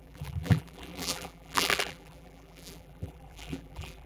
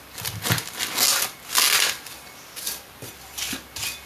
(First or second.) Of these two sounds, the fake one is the first